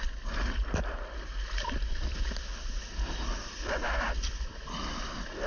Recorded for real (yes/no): yes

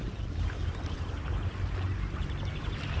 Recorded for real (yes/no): yes